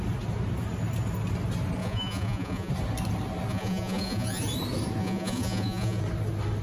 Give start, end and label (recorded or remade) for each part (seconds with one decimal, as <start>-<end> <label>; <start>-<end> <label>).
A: 0.0-1.8 recorded; 1.8-2.7 remade; 2.7-3.5 recorded; 3.5-4.4 remade; 4.4-5.0 recorded; 5.0-6.0 remade; 6.0-6.6 recorded